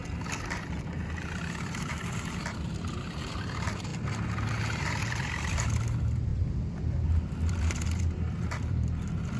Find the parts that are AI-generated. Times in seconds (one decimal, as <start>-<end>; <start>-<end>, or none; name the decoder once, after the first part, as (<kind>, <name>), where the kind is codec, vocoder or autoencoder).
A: 0.0-6.3 (vocoder, BigVGAN v2); 7.5-9.4

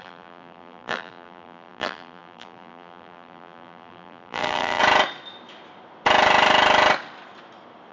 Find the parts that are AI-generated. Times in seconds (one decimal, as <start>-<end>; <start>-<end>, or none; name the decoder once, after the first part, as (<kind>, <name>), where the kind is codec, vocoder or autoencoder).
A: 0.0-4.8 (vocoder, BigVGAN v2)

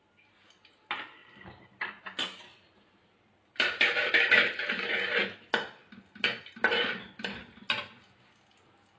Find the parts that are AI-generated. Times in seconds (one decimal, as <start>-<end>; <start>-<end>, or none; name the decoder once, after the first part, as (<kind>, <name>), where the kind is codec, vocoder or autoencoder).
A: 1.2-2.0 (vocoder, BigVGAN v2); 2.5-4.7

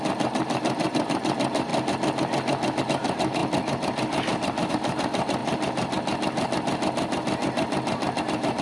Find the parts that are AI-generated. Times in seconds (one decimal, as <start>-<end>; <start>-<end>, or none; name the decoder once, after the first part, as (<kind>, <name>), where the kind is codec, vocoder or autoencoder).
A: 0.0-1.7 (vocoder, BigVGAN v2); 2.8-3.4; 4.7-5.4; 8.2-8.6

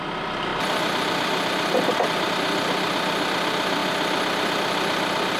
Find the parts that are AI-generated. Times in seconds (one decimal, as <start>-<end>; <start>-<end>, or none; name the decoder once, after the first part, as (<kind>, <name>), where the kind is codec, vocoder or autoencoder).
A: 0.5-2.3 (vocoder, BigVGAN v2)

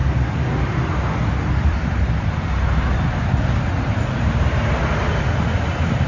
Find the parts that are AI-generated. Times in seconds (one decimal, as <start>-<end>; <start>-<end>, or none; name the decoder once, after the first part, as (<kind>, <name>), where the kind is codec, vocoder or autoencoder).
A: none